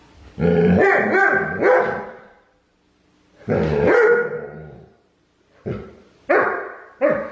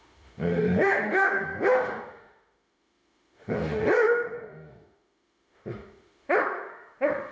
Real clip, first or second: first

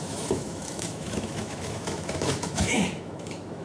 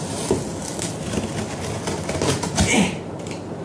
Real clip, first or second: second